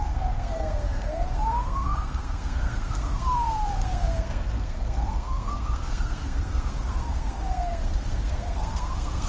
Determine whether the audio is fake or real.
fake